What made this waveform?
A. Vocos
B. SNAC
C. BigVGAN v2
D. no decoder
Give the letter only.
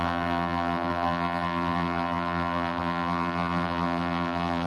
C